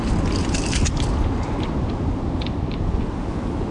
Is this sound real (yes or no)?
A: yes